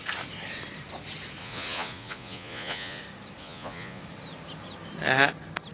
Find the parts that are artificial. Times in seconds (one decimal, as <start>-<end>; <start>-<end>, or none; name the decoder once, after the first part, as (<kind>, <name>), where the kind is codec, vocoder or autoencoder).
1.4-3.0 (vocoder, Vocos); 3.4-4.0